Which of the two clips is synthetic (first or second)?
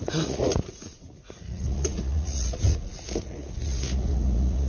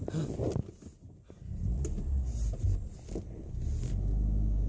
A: first